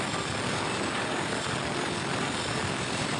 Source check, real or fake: real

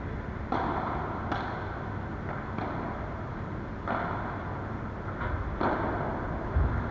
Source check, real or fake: real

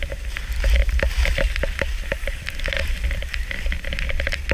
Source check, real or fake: real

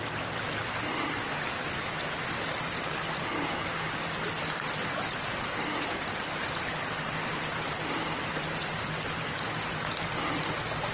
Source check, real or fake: real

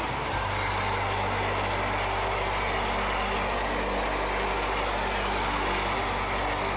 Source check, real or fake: real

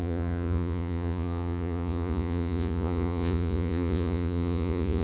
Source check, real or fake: fake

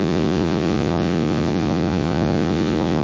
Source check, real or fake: fake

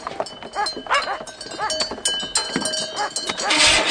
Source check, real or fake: real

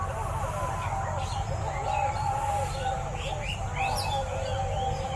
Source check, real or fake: real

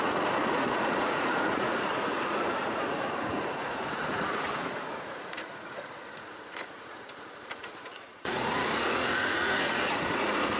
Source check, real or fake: fake